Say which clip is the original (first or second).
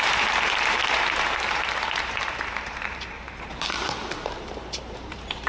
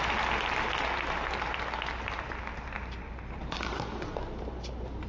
second